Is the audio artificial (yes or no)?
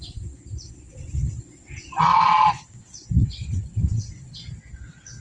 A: yes